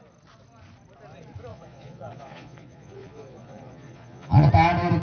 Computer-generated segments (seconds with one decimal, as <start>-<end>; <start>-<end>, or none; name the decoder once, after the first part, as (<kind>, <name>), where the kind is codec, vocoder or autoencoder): 1.5-4.5 (vocoder, Vocos)